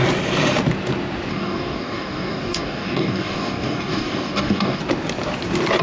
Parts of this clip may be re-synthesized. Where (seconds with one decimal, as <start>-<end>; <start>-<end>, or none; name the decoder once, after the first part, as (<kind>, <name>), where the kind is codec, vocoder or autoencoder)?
1.3-4.8 (codec, DAC)